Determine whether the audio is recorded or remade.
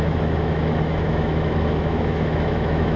remade